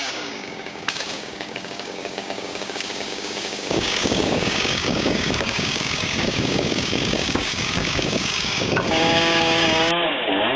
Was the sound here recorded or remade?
remade